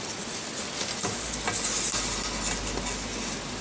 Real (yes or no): yes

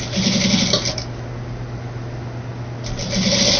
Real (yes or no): yes